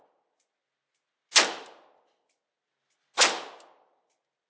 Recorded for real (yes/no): yes